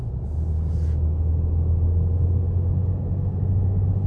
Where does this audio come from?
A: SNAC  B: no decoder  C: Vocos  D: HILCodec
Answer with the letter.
B